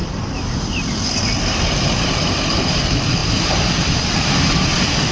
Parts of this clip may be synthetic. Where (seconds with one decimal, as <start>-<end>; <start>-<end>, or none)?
3.2-4.4